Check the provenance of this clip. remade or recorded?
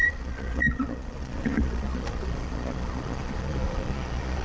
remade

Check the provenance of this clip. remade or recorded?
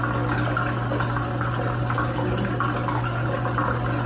recorded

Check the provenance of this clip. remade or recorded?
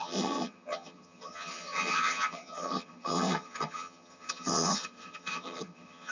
remade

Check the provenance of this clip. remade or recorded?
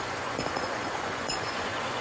remade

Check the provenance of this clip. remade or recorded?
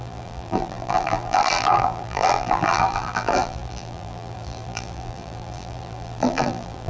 remade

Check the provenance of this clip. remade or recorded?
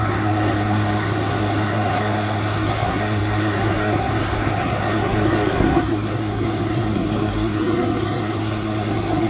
remade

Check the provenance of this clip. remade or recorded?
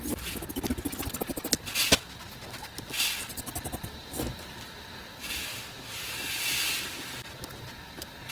recorded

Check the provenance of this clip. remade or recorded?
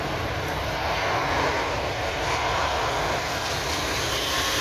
recorded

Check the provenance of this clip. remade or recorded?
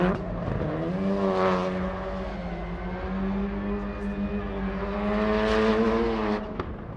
recorded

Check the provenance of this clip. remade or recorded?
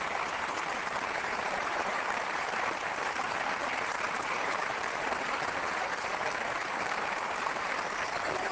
remade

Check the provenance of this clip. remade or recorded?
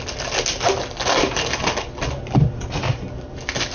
recorded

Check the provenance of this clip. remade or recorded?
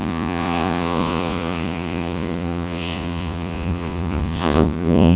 remade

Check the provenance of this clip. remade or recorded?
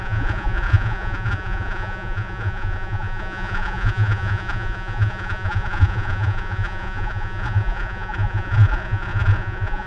remade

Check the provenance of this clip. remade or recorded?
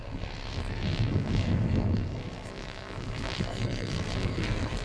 remade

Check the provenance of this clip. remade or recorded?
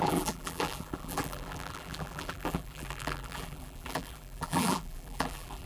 remade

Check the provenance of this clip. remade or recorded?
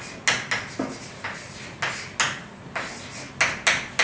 recorded